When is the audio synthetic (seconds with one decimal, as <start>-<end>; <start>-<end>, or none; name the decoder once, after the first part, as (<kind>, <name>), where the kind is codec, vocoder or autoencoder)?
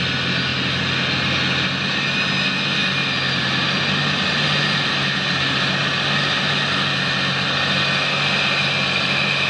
none